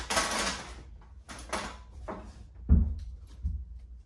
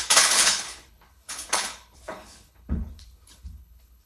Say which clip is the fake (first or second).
second